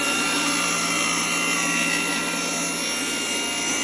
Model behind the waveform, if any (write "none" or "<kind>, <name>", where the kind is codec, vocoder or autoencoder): none